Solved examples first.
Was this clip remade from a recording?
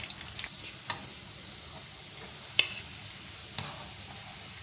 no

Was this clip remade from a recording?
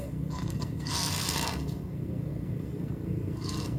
yes